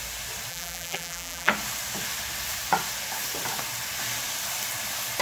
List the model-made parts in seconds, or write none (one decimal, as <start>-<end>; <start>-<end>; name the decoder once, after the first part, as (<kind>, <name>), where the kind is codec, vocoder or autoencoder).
0.5-1.5 (vocoder, BigVGAN v2)